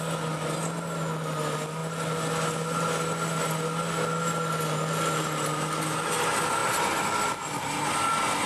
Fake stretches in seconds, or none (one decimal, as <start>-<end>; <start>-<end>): none